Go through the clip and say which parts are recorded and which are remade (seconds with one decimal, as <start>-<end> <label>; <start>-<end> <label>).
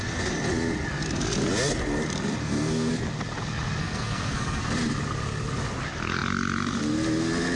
0.0-2.4 recorded; 2.4-2.9 remade; 2.9-3.8 recorded; 3.8-4.7 remade; 4.7-7.6 recorded